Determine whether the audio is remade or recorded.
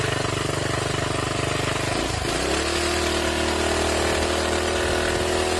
recorded